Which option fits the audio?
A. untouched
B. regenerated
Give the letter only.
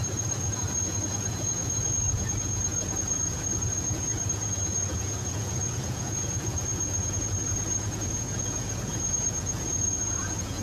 B